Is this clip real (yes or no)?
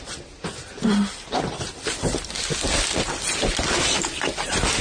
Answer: yes